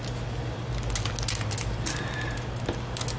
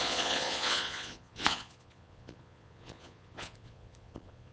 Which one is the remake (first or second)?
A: second